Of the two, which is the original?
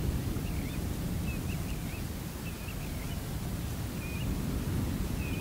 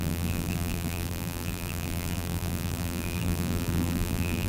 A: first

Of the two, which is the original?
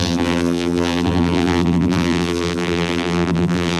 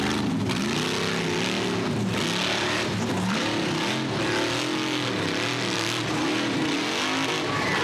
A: second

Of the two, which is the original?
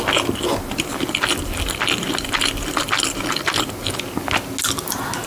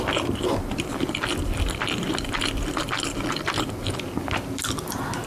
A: first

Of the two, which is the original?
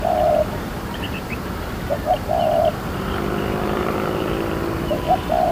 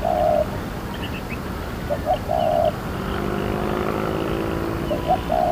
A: second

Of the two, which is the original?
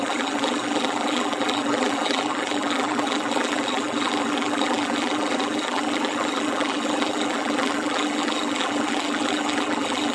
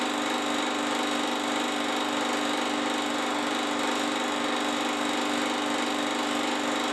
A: second